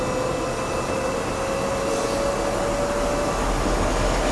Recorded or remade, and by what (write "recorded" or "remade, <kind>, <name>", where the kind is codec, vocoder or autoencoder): recorded